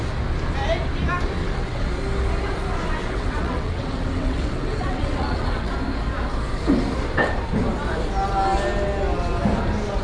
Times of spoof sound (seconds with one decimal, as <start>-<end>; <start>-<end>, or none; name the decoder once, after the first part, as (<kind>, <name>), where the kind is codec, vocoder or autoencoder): 1.4-1.9 (vocoder, WaveNeXt); 3.0-5.7